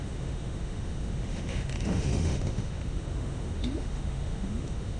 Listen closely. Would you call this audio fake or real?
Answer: fake